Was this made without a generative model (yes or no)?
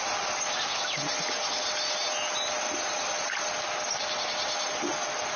yes